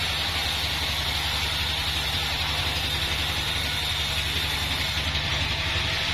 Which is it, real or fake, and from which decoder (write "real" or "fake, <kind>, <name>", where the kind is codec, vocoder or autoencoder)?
real